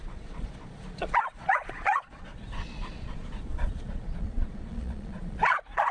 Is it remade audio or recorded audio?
remade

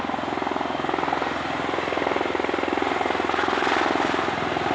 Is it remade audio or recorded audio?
recorded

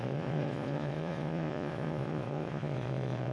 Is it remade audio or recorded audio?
remade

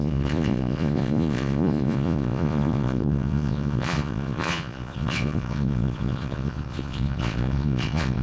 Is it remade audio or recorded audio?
remade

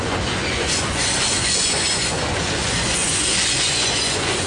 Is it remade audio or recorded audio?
remade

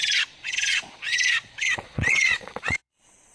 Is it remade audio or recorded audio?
remade